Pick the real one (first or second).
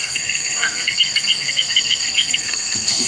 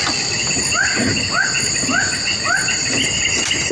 second